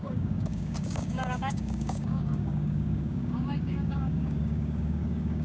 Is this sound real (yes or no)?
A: no